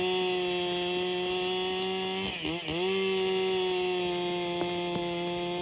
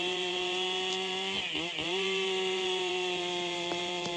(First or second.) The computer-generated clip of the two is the second